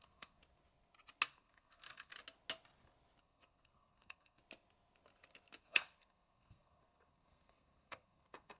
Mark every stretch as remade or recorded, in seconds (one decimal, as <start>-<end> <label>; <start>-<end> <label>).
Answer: 0.0-0.4 remade; 0.4-1.3 recorded; 1.3-2.1 remade; 2.1-3.2 recorded; 3.2-4.4 remade; 4.4-5.6 recorded; 5.6-8.6 remade